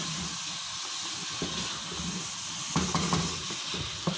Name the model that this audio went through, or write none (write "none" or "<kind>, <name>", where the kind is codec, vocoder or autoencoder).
none